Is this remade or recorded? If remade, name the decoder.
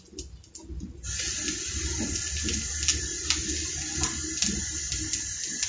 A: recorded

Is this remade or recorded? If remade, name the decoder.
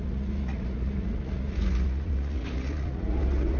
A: remade, vocoder, Vocos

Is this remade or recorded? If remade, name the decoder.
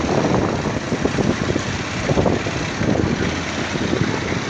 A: recorded